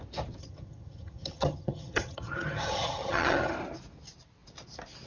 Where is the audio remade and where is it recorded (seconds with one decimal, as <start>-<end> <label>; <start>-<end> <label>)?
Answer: 0.0-0.4 recorded; 0.4-3.5 remade; 3.5-5.1 recorded